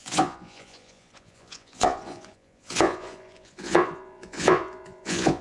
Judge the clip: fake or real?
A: fake